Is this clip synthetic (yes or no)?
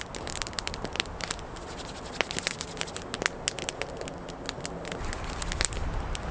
no